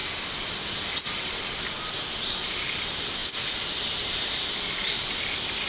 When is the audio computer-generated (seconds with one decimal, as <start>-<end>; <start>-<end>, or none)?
none

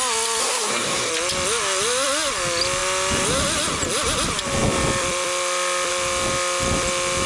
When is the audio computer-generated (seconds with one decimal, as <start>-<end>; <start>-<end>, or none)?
0.4-1.1